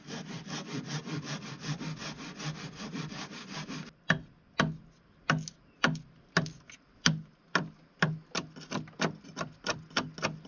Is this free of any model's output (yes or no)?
yes